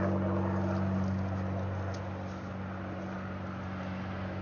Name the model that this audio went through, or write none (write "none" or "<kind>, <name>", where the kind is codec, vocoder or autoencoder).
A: none